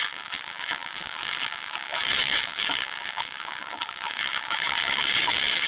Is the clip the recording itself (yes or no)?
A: no